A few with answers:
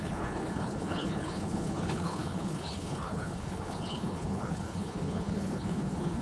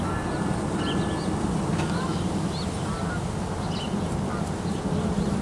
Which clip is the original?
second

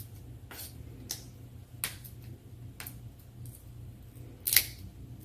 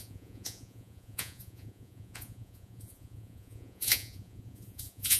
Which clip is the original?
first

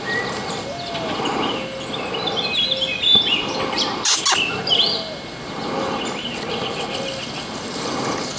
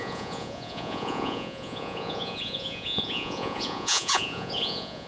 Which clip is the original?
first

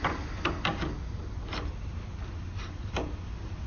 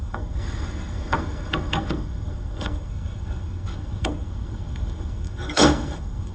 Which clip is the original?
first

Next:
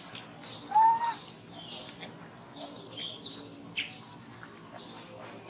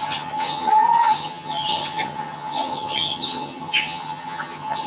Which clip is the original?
first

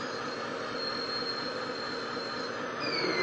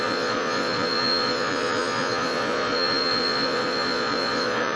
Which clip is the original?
first